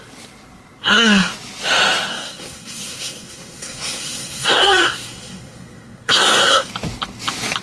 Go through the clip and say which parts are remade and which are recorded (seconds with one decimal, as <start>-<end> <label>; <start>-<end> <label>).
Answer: 0.0-0.8 recorded; 0.8-1.3 remade; 1.3-2.1 recorded; 2.1-6.7 remade; 6.7-7.6 recorded